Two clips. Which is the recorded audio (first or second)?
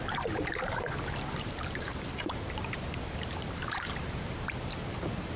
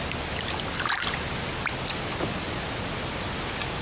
second